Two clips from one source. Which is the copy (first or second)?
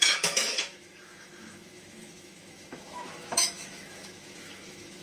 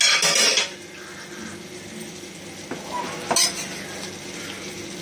first